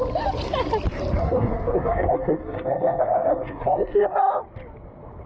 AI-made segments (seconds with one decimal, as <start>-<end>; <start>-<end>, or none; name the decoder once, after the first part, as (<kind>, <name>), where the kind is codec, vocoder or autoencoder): 1.2-4.4 (codec, SNAC)